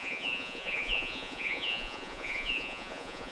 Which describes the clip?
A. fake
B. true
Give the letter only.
A